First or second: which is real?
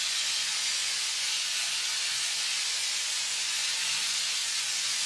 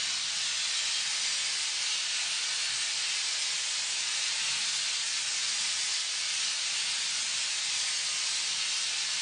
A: second